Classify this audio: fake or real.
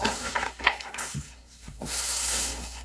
fake